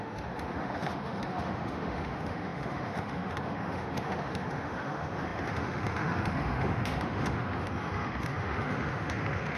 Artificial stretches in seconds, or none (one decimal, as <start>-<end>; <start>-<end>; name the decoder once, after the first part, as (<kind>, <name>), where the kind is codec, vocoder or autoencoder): 0.0-9.6 (autoencoder, DAC-VAE)